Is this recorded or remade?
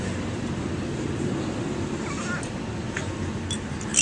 recorded